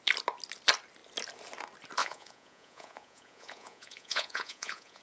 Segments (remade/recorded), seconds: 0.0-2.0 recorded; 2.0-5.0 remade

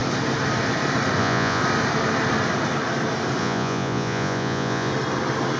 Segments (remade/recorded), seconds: 0.0-1.2 recorded; 1.2-1.6 remade; 1.6-3.4 recorded; 3.4-4.9 remade; 4.9-5.6 recorded